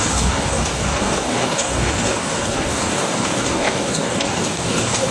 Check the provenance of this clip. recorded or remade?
remade